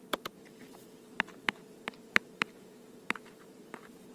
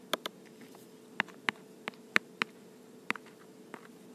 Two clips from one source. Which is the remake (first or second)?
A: first